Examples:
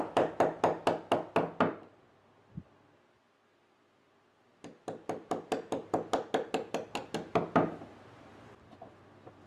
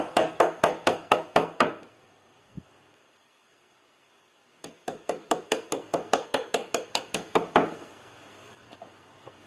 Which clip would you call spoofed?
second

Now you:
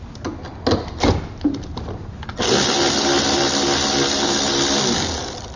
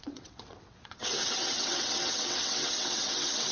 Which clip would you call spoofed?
second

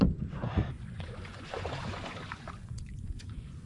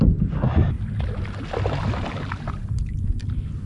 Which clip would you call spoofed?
first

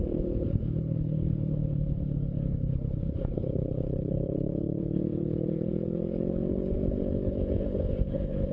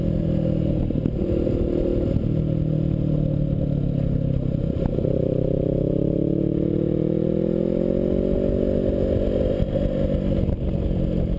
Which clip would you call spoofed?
first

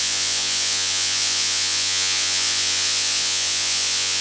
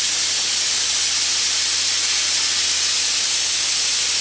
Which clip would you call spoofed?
first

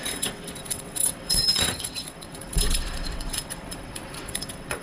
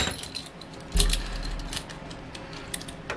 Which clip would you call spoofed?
first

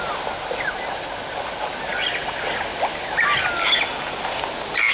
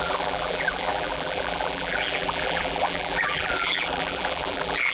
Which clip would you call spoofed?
second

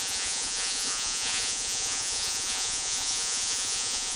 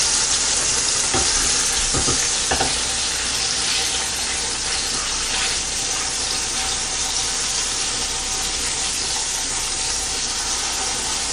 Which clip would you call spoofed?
first